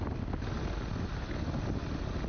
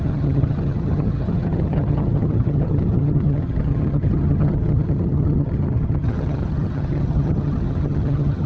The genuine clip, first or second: first